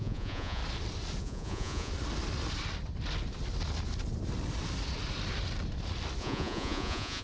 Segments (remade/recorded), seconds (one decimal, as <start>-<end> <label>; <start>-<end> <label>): 0.0-0.6 remade; 0.6-1.2 recorded; 1.2-1.9 remade; 1.9-6.2 recorded; 6.2-7.2 remade